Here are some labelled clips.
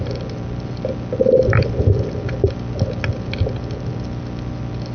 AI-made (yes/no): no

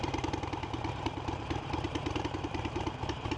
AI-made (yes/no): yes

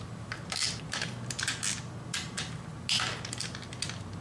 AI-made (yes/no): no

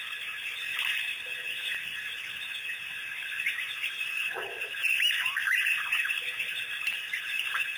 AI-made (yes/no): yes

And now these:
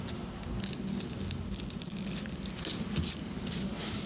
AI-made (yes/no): no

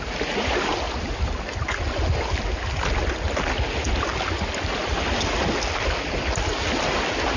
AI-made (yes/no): no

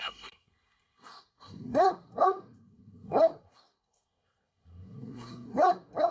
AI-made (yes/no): yes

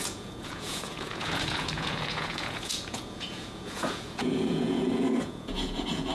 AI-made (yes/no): yes